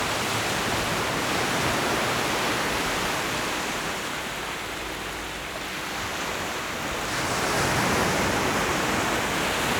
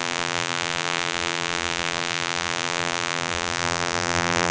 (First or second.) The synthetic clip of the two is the second